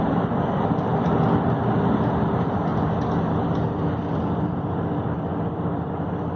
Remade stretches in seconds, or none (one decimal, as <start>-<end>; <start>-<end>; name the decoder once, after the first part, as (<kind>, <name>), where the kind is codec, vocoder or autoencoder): 0.0-2.7 (vocoder, BigVGAN v2); 4.2-6.4